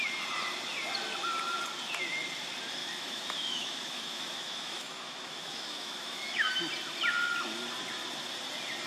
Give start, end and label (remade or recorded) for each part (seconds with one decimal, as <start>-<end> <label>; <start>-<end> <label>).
0.0-2.8 recorded; 2.8-6.5 remade; 6.5-8.9 recorded